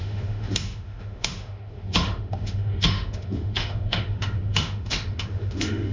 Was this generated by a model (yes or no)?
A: yes